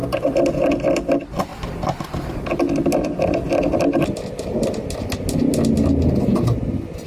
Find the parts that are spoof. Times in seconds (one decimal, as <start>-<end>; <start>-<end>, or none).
0.0-1.1; 1.5-5.0